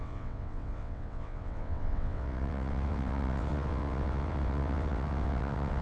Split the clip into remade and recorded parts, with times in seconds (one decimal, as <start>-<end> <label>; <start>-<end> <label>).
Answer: 0.0-5.8 remade